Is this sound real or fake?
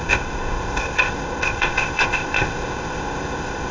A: fake